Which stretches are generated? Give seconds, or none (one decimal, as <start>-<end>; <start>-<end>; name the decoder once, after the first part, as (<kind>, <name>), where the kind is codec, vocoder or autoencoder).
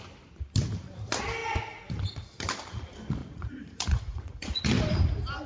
3.2-4.6 (vocoder, Vocos)